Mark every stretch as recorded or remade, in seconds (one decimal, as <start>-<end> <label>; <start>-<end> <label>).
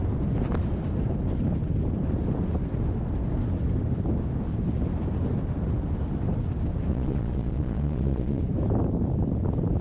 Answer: 0.0-6.9 recorded; 6.9-8.4 remade; 8.4-9.8 recorded